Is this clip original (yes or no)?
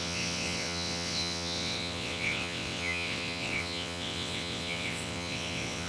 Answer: no